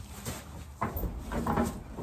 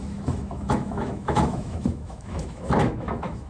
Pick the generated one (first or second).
second